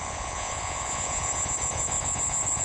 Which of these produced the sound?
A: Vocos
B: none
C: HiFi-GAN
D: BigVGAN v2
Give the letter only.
A